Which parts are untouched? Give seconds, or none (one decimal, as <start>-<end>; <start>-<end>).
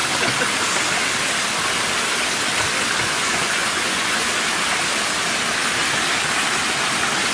0.0-3.0; 4.3-7.3